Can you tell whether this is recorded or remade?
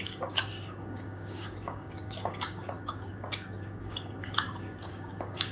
remade